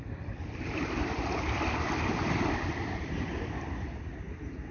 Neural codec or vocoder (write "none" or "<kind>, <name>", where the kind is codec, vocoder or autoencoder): none